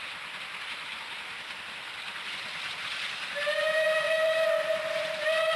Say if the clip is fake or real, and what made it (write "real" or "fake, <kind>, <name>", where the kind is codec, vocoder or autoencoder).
real